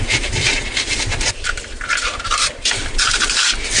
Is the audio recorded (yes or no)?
yes